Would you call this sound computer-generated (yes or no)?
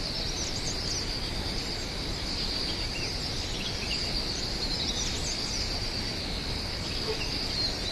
no